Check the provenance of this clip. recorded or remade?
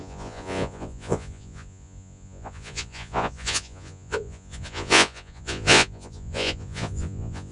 remade